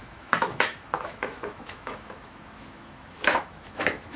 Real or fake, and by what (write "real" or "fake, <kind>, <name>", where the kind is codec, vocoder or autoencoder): fake, autoencoder, DAC-VAE